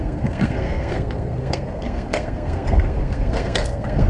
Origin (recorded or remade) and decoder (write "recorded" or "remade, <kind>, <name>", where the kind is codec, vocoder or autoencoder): remade, codec, SNAC